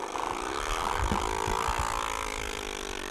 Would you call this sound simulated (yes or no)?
no